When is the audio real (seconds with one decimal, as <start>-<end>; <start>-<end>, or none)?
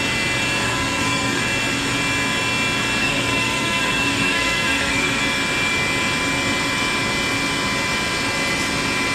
0.0-0.6; 1.4-3.0; 5.2-9.1